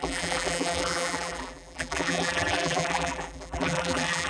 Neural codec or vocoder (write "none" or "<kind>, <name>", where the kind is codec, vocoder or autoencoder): vocoder, BigVGAN v2